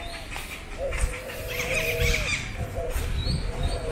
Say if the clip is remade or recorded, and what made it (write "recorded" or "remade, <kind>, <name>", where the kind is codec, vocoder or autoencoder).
recorded